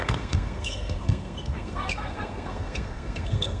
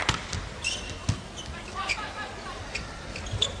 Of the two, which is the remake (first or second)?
first